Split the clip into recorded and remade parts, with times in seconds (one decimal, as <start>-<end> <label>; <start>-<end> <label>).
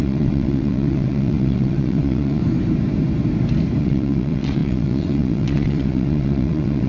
0.0-2.4 remade; 2.4-3.8 recorded; 3.8-6.9 remade